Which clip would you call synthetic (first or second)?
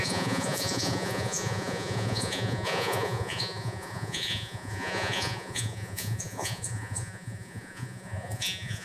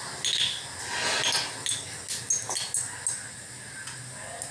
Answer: first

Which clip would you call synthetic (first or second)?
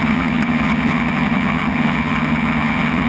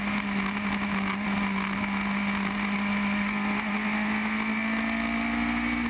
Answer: first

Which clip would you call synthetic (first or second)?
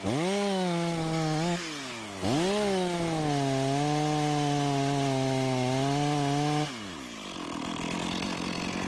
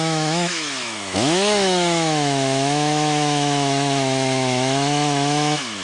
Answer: second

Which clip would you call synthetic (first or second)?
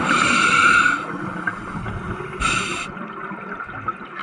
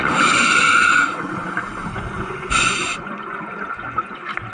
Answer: second